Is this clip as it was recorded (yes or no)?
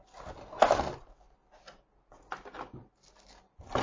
yes